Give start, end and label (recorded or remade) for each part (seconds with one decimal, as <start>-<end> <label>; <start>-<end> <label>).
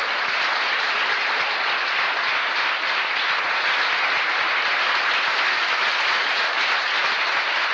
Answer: 0.0-7.7 recorded